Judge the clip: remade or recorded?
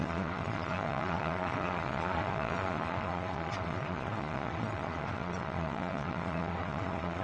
remade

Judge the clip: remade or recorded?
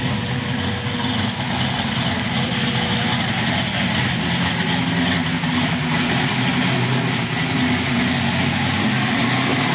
recorded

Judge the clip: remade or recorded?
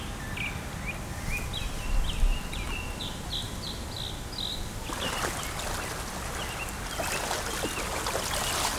recorded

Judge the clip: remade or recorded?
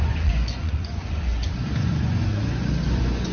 remade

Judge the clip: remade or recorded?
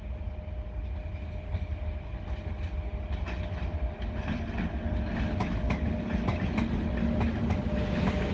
recorded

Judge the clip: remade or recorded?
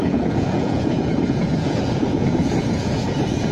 remade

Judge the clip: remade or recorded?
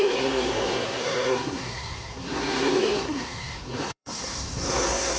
remade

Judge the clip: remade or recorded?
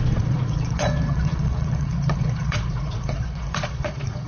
remade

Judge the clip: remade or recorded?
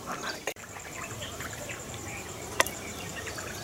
remade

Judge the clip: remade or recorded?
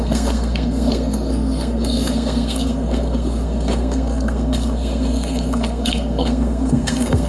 remade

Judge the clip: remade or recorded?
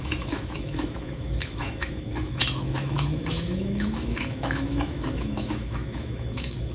remade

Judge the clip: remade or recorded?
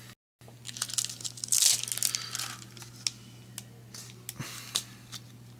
recorded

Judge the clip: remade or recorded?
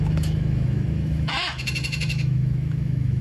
remade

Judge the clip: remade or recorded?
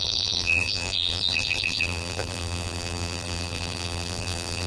remade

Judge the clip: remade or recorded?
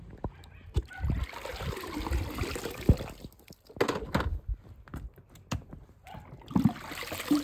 recorded